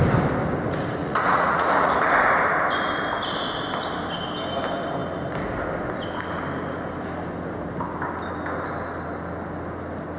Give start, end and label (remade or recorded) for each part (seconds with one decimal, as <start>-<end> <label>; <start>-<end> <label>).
0.0-1.0 recorded; 1.0-1.9 remade; 1.9-10.2 recorded